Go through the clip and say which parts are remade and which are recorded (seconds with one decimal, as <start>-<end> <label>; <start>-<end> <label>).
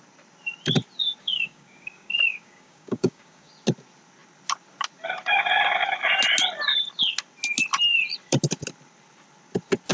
0.0-1.2 recorded; 1.2-3.5 remade; 3.5-9.9 recorded